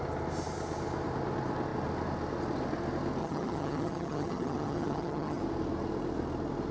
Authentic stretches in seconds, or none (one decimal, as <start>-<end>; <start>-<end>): 0.0-3.2; 5.4-6.7